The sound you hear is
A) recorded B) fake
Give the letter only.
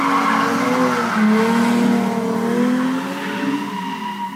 A